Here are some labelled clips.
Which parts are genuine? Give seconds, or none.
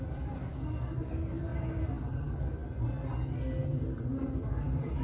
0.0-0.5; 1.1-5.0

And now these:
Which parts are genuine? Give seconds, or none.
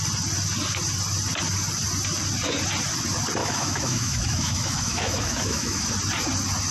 0.0-3.4; 5.8-6.7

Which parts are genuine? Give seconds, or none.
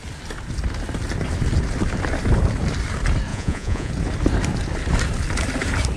0.0-3.3; 3.9-6.0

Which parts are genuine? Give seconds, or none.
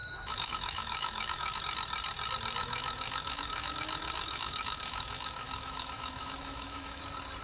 1.6-2.6; 7.0-7.4